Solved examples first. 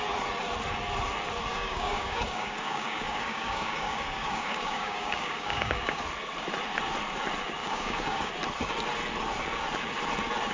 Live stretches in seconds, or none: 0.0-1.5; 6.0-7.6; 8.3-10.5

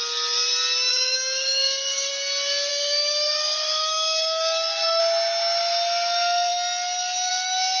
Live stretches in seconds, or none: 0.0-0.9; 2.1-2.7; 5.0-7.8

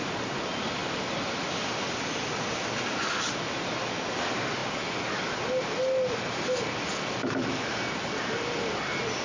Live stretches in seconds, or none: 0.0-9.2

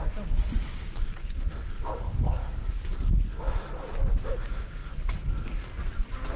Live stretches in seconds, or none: 0.0-1.6; 2.8-4.8; 5.6-6.4

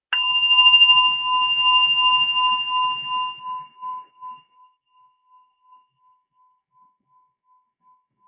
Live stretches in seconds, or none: 0.0-3.4

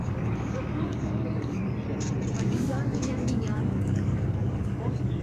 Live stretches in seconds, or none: 1.6-2.4